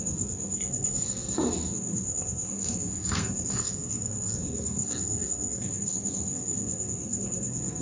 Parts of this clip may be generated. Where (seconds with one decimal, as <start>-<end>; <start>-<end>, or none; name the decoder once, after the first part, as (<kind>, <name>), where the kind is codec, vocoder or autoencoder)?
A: 0.0-7.8 (codec, SNAC)